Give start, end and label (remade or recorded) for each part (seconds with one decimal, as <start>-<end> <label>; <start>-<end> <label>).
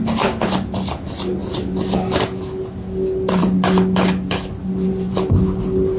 0.0-6.0 recorded